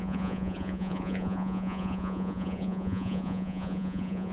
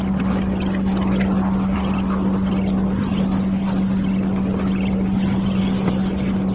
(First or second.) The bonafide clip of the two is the second